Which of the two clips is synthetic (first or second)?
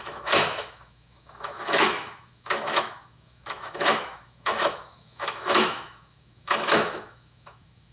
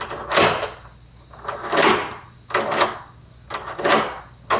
first